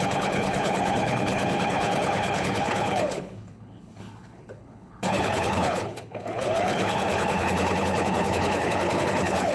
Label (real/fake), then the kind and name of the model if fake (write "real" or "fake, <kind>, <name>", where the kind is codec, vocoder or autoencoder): fake, codec, HILCodec